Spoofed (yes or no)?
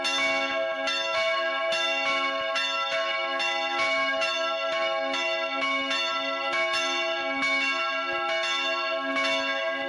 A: no